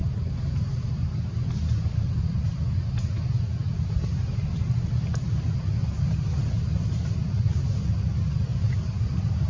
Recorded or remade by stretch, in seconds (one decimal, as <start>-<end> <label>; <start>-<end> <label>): 0.0-5.8 recorded; 5.8-7.9 remade; 7.9-9.5 recorded